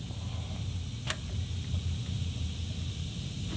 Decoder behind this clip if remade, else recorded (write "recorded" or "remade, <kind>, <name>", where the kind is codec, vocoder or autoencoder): recorded